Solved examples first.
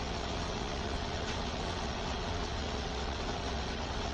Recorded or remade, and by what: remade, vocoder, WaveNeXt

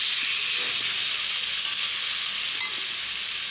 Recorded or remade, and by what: recorded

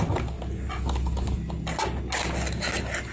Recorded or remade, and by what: recorded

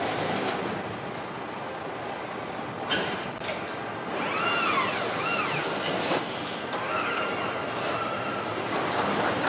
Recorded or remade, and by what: recorded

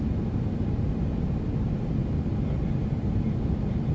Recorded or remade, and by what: recorded